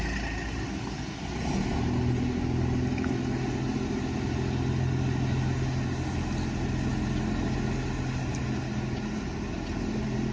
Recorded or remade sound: recorded